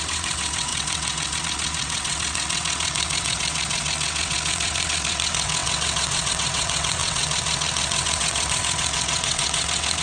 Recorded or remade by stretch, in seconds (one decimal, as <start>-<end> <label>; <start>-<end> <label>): 0.0-10.0 remade